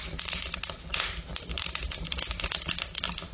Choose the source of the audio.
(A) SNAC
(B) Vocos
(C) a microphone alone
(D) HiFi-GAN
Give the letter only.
C